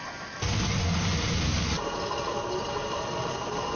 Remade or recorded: recorded